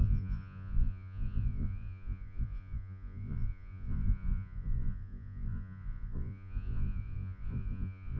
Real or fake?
fake